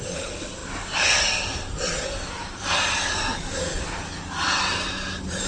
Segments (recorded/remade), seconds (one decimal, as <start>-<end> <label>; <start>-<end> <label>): 0.0-5.5 recorded